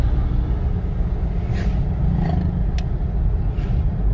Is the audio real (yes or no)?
yes